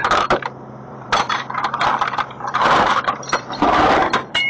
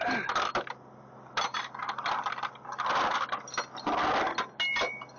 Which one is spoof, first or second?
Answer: first